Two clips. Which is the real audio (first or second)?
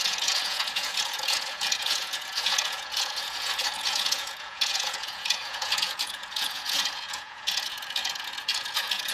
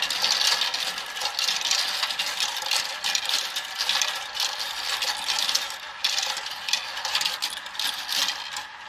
second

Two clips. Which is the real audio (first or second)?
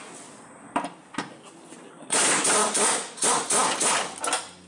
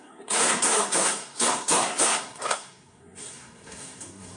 first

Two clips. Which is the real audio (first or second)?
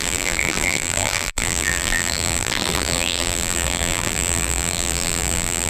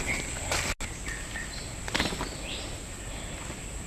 second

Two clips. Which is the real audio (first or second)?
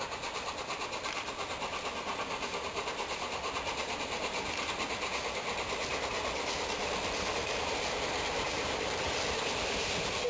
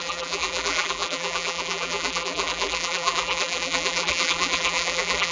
first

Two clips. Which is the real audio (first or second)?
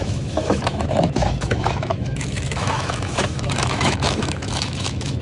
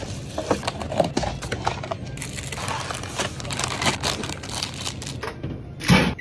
second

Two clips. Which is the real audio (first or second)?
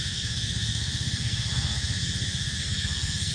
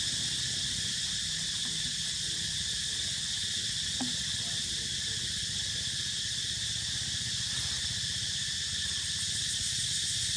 second